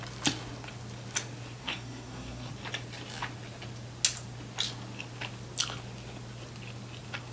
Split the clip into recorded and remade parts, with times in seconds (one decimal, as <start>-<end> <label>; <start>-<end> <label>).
0.0-1.6 recorded; 1.6-2.5 remade; 2.5-7.3 recorded